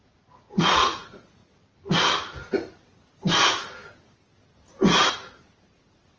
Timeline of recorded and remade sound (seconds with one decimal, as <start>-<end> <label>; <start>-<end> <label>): 0.0-1.4 remade; 1.4-5.1 recorded; 5.1-6.2 remade